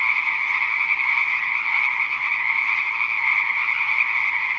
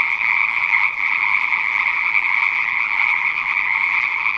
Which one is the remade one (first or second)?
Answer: second